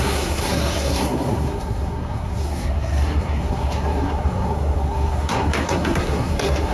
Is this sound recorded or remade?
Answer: remade